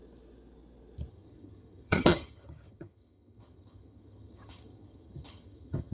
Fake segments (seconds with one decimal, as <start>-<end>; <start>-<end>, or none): 1.1-5.9